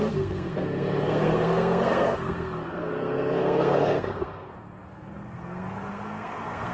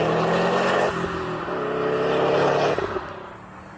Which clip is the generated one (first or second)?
first